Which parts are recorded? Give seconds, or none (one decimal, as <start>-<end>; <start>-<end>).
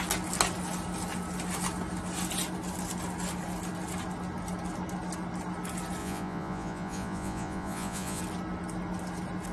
0.0-6.0; 8.2-9.5